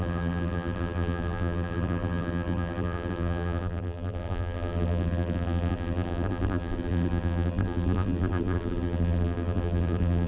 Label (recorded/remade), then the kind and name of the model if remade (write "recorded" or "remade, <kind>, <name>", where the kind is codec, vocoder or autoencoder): remade, vocoder, BigVGAN v2